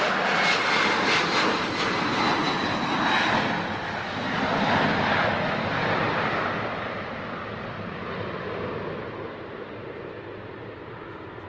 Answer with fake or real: real